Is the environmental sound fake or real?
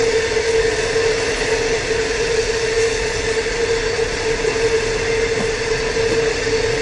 real